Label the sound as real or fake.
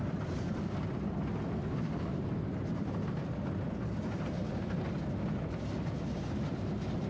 real